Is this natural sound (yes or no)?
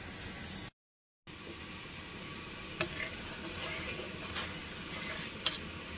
yes